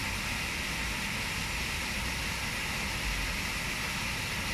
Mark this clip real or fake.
real